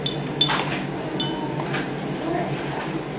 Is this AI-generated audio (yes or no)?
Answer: no